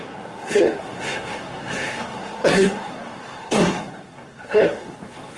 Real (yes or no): no